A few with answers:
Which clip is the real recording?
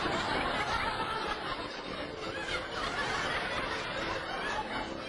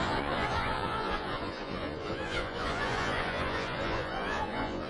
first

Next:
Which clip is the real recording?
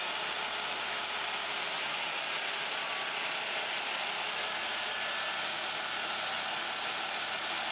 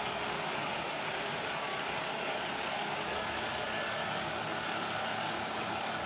first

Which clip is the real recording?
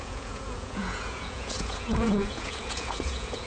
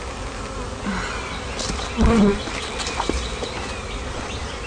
second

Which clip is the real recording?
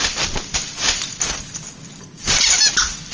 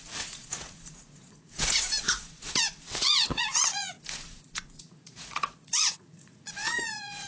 first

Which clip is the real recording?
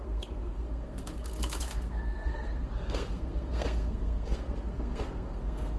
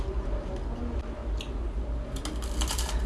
second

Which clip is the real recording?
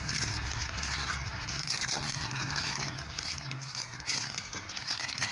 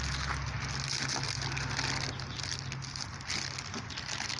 second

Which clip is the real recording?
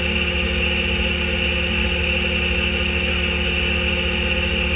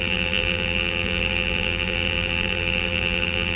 first